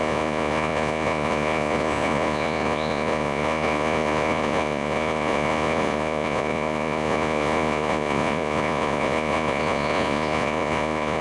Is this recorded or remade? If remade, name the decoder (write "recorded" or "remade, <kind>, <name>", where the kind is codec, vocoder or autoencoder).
remade, vocoder, Vocos